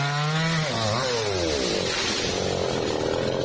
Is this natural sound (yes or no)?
yes